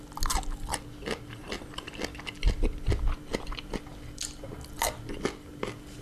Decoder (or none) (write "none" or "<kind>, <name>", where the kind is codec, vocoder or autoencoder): none